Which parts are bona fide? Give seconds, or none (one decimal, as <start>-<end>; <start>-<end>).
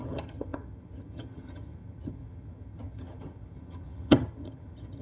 none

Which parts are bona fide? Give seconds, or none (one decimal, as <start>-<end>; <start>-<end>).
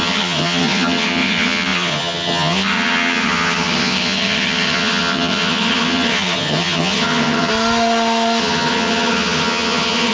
7.5-8.4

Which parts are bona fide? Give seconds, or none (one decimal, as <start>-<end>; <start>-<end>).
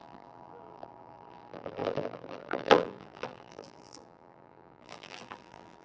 none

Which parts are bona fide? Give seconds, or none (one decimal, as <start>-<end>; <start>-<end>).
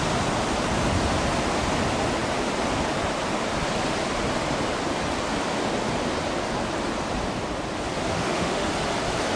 0.0-8.1; 8.7-9.4